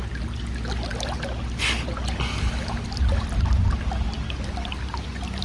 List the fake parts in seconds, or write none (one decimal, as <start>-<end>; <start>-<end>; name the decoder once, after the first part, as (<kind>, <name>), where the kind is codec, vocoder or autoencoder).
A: none

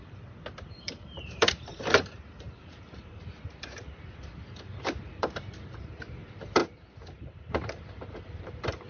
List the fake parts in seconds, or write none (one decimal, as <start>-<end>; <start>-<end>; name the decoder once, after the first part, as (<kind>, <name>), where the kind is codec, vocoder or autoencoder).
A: 0.6-8.9 (vocoder, BigVGAN v2)

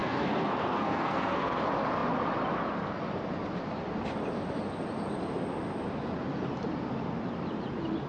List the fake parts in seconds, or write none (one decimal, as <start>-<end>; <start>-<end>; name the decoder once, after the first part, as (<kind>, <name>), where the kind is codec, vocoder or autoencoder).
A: 0.0-1.6 (codec, SNAC)

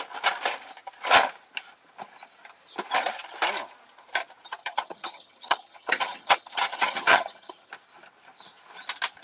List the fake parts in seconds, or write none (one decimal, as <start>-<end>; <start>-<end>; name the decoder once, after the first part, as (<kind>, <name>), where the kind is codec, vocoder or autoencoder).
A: 4.6-7.7 (vocoder, HiFi-GAN)